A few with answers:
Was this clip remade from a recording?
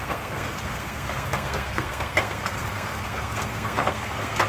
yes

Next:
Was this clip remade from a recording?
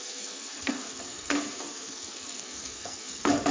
yes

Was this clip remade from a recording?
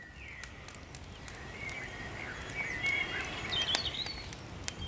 no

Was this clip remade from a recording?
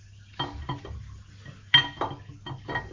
no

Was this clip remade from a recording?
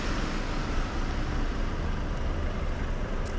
no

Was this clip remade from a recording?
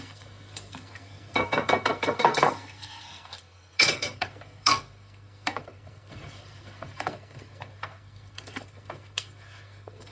yes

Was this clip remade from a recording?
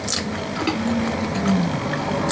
no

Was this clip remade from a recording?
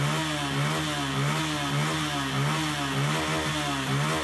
no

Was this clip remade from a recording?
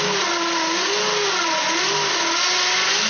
no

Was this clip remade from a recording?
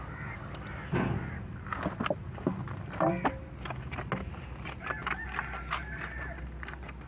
no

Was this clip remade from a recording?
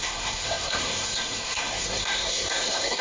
yes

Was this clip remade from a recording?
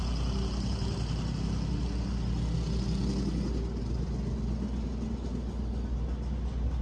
no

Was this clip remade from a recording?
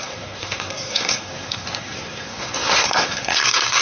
yes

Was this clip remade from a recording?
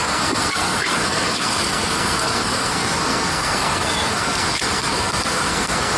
yes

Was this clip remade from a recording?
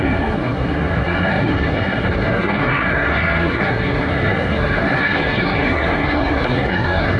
yes